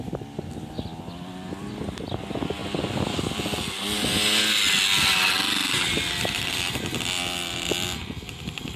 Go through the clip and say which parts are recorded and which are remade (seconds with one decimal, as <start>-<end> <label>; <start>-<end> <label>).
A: 0.0-8.8 recorded